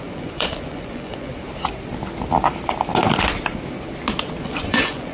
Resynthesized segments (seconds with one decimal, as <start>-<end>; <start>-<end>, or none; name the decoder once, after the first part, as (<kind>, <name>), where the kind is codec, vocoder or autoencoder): 0.0-1.3 (vocoder, Vocos); 4.4-5.1